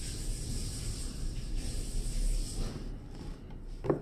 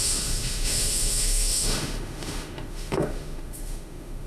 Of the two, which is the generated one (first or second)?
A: second